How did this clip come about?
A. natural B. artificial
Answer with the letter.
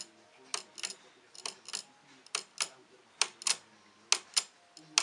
A